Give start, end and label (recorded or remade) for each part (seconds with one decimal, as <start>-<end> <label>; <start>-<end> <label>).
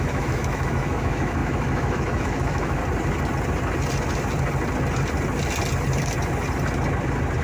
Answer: 0.0-2.8 remade; 2.8-7.4 recorded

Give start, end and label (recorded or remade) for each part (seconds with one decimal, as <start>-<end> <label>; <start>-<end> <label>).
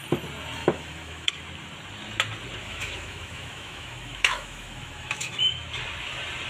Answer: 0.0-0.6 recorded; 0.6-1.3 remade; 1.3-2.6 recorded; 2.6-5.5 remade; 5.5-6.5 recorded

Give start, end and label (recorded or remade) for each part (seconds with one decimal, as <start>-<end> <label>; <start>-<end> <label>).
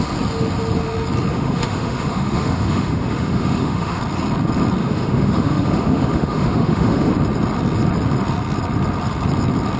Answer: 0.0-1.3 recorded; 1.3-4.0 remade; 4.0-4.8 recorded; 4.8-7.1 remade; 7.1-9.8 recorded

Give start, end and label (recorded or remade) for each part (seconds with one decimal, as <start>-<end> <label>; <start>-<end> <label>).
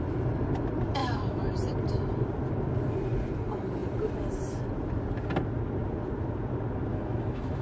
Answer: 0.0-1.0 recorded; 1.0-1.5 remade; 1.5-6.9 recorded; 6.9-7.6 remade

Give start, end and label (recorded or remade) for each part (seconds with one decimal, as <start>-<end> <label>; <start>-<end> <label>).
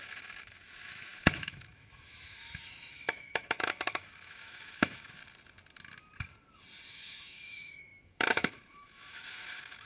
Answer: 0.0-5.2 remade; 5.2-6.9 recorded; 6.9-9.9 remade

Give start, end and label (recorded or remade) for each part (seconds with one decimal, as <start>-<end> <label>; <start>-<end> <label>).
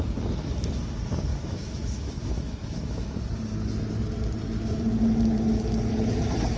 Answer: 0.0-1.3 recorded; 1.3-3.1 remade; 3.1-6.6 recorded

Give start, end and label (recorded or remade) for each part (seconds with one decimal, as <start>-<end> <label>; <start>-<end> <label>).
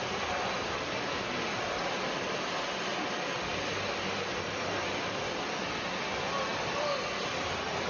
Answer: 0.0-7.9 recorded